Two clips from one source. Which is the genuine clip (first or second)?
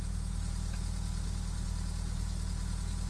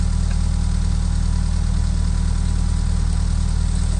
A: second